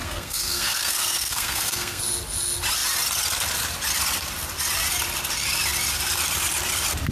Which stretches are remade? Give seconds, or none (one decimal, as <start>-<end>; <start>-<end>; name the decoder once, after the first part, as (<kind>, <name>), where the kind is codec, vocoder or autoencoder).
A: 0.0-2.0 (codec, SNAC)